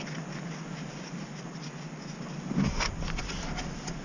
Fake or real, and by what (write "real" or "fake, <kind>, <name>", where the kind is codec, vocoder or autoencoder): real